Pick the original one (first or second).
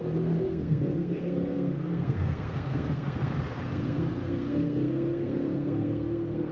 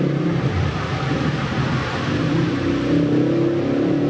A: second